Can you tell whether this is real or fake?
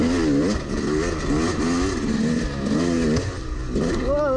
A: real